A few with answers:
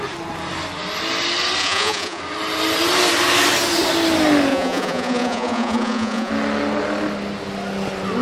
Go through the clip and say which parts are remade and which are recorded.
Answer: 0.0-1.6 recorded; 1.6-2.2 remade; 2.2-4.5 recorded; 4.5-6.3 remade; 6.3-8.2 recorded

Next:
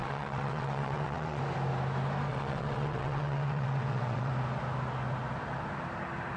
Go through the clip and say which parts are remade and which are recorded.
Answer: 0.0-1.4 remade; 1.4-2.3 recorded; 2.3-4.3 remade; 4.3-6.4 recorded

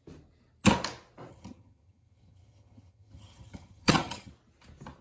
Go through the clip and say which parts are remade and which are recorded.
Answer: 0.0-1.3 recorded; 1.3-4.3 remade; 4.3-5.0 recorded

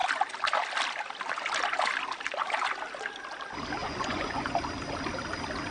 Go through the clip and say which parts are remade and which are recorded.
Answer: 0.0-3.8 recorded; 3.8-4.6 remade; 4.6-5.7 recorded

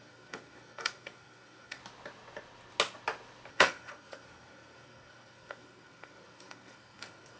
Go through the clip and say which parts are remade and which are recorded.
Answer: 0.0-1.8 remade; 1.8-3.5 recorded; 3.5-7.4 remade

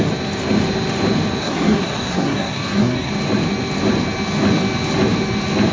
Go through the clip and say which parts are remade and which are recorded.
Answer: 0.0-1.4 recorded; 1.4-3.1 remade; 3.1-5.7 recorded

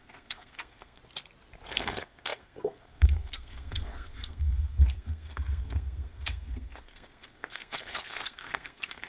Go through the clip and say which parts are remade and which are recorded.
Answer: 0.0-1.0 remade; 1.0-1.7 recorded; 1.7-9.1 remade